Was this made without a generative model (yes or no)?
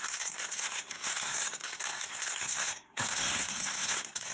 no